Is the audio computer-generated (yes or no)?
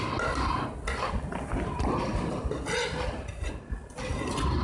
no